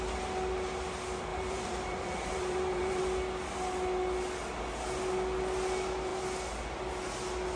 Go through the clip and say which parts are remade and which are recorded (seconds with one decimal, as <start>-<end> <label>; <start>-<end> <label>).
0.0-1.3 recorded; 1.3-3.0 remade; 3.0-7.6 recorded